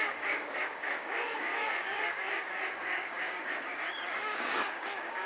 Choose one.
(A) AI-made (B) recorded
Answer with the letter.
A